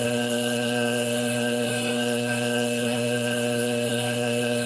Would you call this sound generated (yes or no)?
yes